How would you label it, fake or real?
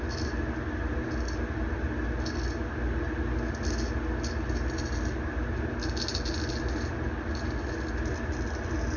real